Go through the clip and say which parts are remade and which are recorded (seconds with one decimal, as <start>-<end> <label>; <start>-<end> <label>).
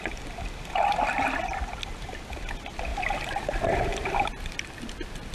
0.0-5.3 recorded